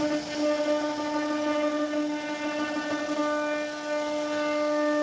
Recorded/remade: recorded